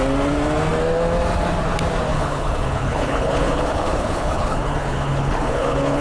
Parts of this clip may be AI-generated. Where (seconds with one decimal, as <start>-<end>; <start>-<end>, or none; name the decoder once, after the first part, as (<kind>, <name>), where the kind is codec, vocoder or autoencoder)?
2.1-6.0 (codec, HILCodec)